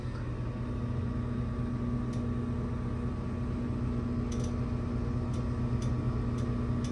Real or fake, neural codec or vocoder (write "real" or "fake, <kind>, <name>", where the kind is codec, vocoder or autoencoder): real